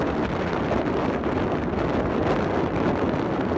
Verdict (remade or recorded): recorded